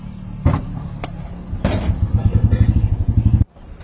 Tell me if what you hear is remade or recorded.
recorded